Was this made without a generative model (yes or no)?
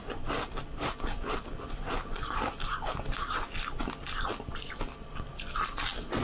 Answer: yes